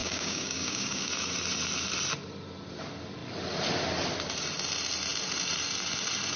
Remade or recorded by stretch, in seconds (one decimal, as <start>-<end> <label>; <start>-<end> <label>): 0.0-1.1 remade; 1.1-6.4 recorded